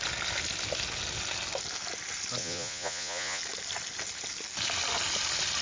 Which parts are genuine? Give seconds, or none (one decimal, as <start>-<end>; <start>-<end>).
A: 0.0-2.4; 3.4-5.6